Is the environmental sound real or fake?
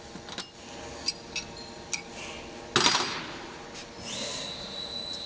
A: real